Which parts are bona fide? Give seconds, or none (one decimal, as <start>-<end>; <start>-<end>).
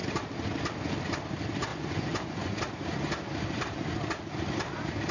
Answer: 0.0-1.7; 2.6-5.1